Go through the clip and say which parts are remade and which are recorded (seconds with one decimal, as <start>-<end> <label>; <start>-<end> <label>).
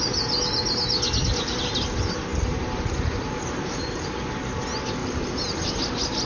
0.0-2.3 recorded; 2.3-4.3 remade; 4.3-5.0 recorded; 5.0-5.7 remade; 5.7-6.3 recorded